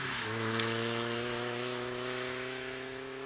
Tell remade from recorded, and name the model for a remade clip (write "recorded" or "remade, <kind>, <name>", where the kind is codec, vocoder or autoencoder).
remade, autoencoder, DAC-VAE